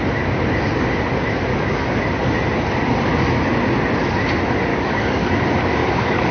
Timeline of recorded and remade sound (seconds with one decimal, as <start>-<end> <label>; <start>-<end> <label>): 0.0-1.5 recorded; 1.5-2.0 remade; 2.0-4.7 recorded; 4.7-5.3 remade; 5.3-5.8 recorded; 5.8-6.3 remade